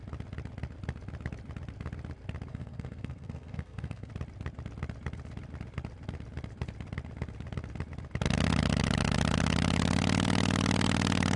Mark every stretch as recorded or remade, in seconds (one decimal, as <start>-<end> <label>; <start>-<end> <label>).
0.0-2.5 recorded; 2.5-4.1 remade; 4.1-11.4 recorded